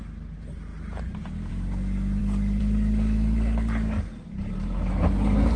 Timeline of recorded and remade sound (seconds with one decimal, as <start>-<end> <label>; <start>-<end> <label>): 0.0-5.6 recorded